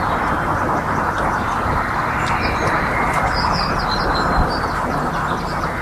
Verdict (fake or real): real